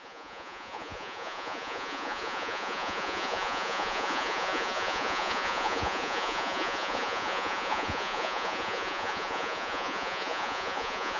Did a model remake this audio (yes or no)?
yes